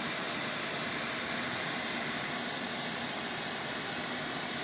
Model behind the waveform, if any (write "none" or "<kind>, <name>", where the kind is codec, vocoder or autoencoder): vocoder, BigVGAN v2